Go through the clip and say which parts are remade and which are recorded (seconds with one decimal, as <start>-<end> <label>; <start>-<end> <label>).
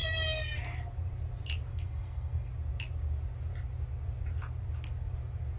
0.0-1.7 recorded; 1.7-2.5 remade; 2.5-5.6 recorded